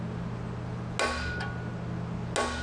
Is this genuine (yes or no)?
yes